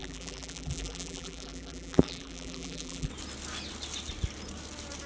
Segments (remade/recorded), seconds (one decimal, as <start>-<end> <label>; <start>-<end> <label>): 0.0-3.1 remade; 3.1-5.1 recorded